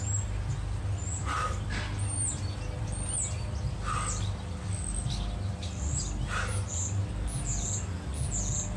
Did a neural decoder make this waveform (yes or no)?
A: no